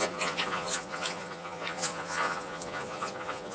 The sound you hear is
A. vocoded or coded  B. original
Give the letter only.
A